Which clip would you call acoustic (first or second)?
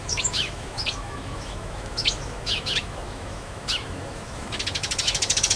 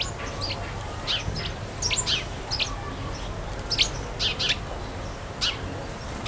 second